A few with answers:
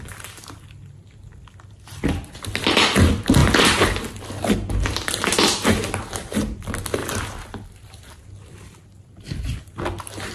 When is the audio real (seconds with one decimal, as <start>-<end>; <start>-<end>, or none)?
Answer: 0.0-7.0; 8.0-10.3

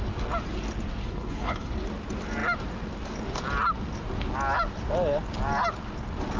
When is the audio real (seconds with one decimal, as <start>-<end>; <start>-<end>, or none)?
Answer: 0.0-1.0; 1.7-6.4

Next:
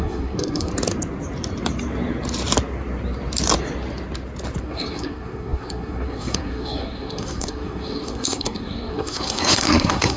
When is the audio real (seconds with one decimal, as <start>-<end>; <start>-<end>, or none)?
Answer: 0.7-4.6

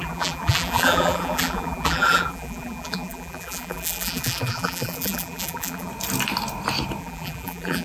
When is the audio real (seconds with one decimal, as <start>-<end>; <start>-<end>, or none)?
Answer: 5.9-7.0

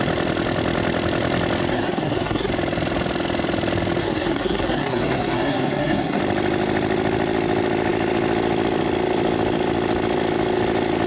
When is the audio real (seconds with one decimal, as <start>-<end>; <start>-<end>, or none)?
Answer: 0.0-1.7; 2.5-4.0; 6.2-11.1

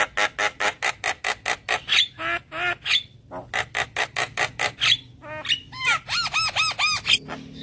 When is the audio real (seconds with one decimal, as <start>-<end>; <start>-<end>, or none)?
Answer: 0.0-7.6

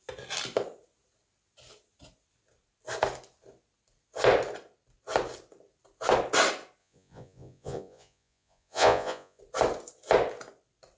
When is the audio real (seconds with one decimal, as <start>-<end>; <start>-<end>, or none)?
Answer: 0.0-6.8; 9.4-11.0

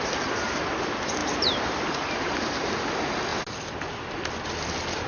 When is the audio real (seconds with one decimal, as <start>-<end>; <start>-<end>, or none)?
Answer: 0.0-1.2; 2.9-5.1